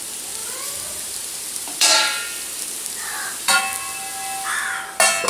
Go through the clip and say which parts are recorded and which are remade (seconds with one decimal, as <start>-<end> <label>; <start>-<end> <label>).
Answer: 0.0-0.4 recorded; 0.4-3.6 remade; 3.6-5.3 recorded